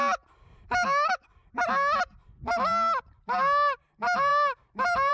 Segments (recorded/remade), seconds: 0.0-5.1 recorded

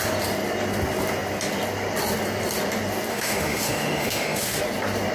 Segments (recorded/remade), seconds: 0.0-3.1 recorded; 3.1-4.6 remade; 4.6-5.1 recorded